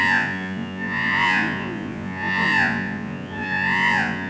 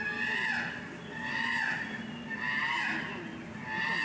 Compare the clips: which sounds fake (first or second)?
first